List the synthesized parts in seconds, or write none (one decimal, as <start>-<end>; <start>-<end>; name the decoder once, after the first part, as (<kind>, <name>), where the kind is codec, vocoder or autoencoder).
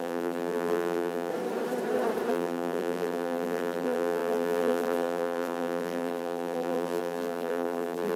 0.0-1.3 (vocoder, BigVGAN v2); 2.3-8.2